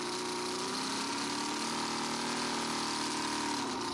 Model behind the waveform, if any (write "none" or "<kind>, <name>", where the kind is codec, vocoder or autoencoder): none